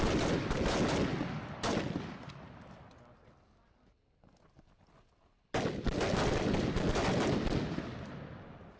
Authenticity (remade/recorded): recorded